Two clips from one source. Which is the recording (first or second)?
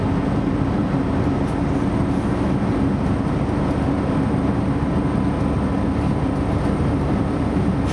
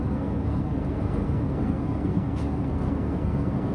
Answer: first